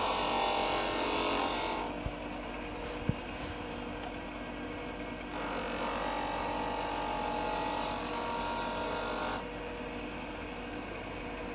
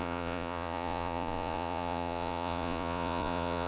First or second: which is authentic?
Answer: first